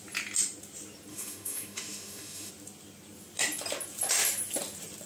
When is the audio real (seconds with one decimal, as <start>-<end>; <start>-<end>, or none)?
0.0-1.1; 2.5-5.1